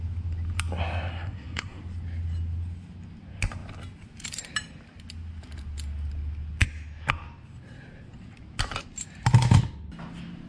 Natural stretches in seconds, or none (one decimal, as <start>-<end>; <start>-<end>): 0.0-1.1; 1.8-10.5